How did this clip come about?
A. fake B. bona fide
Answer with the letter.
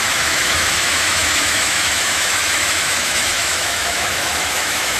A